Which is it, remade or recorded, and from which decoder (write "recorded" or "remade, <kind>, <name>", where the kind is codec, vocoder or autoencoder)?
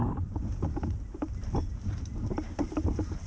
remade, vocoder, BigVGAN v2